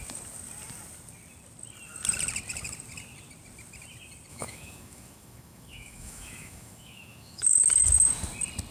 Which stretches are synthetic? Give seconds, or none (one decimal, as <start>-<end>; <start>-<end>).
4.3-7.6